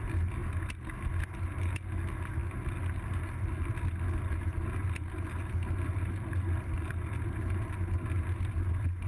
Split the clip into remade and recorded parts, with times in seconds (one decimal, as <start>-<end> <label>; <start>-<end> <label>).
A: 0.0-9.1 recorded